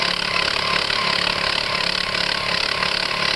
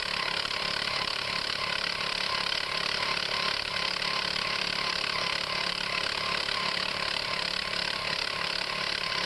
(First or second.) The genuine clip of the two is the first